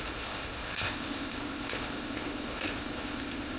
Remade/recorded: remade